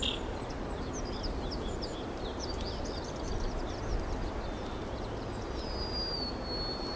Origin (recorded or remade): recorded